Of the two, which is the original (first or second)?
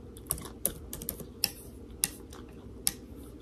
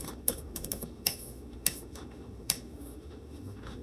first